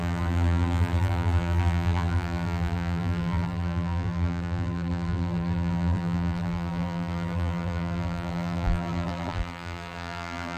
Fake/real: fake